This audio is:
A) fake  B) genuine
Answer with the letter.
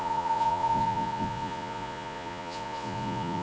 A